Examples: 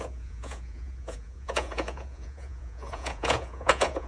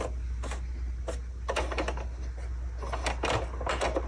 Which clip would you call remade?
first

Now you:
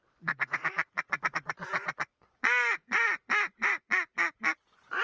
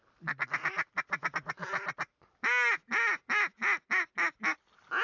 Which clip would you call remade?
first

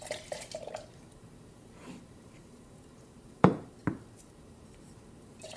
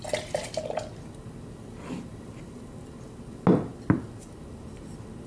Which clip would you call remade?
first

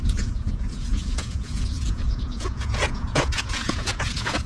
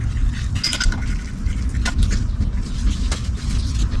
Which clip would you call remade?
first